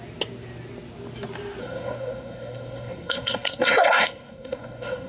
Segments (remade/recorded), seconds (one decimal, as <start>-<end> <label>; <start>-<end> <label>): 0.0-1.6 recorded; 1.6-5.1 remade